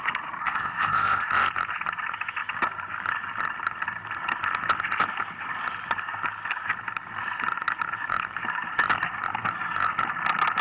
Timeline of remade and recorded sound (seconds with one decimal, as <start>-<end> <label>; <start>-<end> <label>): 0.0-0.4 recorded; 0.4-1.3 remade; 1.3-10.6 recorded